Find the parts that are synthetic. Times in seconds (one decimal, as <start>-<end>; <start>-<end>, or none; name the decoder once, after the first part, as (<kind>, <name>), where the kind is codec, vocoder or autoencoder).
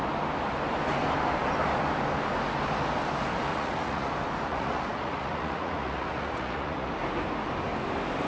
3.5-4.1 (vocoder, Vocos); 4.5-6.9